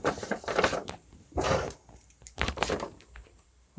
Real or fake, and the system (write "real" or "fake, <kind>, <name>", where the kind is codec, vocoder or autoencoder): fake, vocoder, BigVGAN v2